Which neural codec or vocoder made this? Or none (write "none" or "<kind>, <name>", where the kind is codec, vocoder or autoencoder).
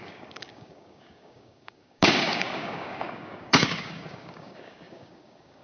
codec, DAC